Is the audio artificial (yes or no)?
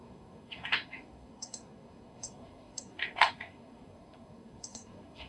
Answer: yes